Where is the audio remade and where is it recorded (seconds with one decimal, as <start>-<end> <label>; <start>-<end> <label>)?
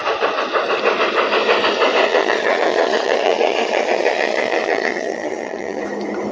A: 0.0-2.0 recorded; 2.0-5.8 remade; 5.8-6.3 recorded